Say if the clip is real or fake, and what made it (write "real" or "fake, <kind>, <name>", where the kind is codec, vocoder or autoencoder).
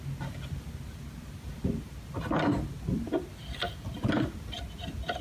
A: real